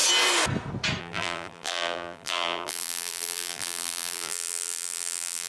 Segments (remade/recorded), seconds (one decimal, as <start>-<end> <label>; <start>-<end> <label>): 0.0-1.0 recorded; 1.0-5.5 remade